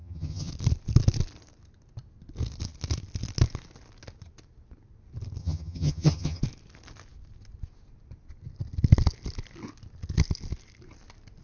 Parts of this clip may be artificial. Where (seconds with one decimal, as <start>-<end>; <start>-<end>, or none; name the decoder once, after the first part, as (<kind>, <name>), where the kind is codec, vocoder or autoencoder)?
0.0-0.5 (vocoder, HiFi-GAN); 5.4-6.4